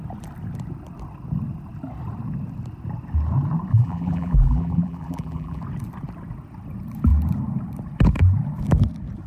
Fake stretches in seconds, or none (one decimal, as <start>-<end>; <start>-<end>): 3.7-5.6